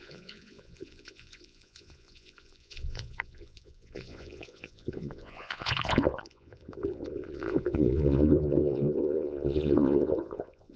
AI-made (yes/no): yes